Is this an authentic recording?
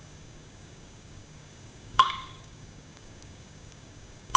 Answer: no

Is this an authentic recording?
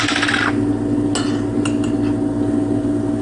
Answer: yes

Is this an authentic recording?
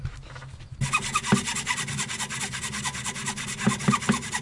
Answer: yes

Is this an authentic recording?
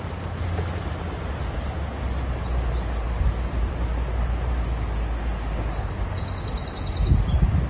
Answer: yes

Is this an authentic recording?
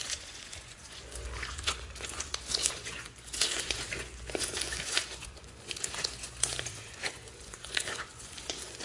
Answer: no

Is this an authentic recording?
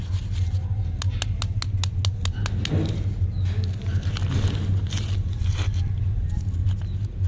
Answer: yes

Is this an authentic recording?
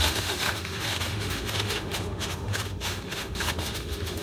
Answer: no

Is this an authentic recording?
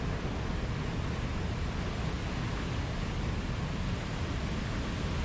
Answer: yes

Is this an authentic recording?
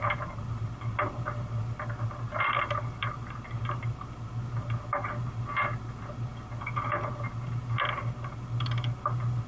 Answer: yes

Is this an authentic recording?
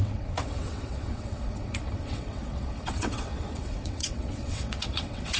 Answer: no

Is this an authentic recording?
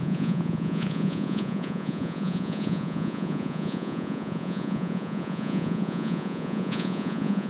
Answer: no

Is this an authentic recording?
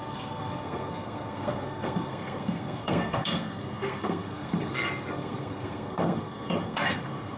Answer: no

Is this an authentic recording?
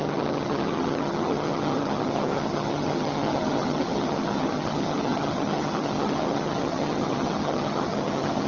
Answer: no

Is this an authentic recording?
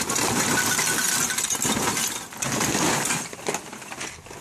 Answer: yes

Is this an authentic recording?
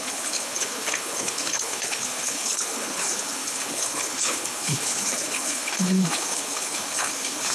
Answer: no